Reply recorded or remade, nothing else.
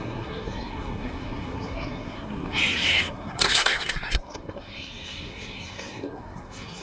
remade